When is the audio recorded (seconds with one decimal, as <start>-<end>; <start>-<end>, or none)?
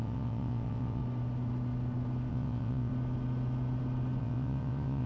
1.0-2.3; 2.9-4.2